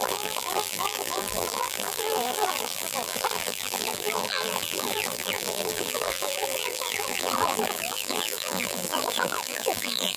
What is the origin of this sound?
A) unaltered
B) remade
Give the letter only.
B